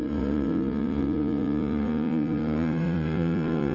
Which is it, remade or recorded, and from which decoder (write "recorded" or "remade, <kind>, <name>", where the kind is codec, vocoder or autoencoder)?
remade, vocoder, Vocos